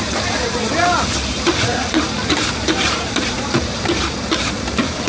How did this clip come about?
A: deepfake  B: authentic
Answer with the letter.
A